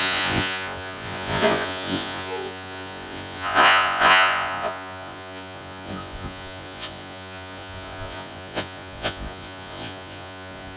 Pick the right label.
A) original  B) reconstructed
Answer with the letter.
B